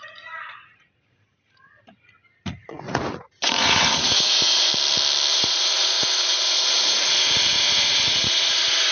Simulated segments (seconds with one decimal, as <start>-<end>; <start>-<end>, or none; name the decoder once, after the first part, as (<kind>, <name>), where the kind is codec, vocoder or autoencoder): 0.0-4.7 (vocoder, Vocos); 5.3-8.9